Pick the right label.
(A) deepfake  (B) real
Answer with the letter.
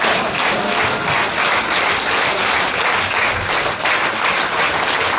B